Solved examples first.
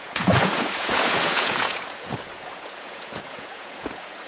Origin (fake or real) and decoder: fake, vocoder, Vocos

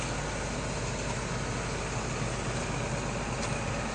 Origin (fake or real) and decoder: real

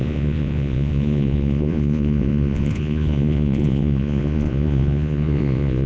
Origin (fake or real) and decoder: fake, vocoder, Vocos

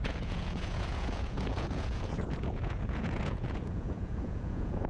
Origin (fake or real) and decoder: fake, vocoder, Vocos